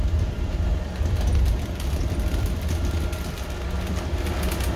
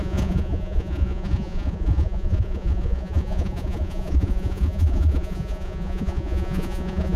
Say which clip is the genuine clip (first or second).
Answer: first